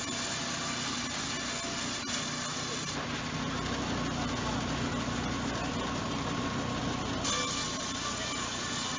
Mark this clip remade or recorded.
recorded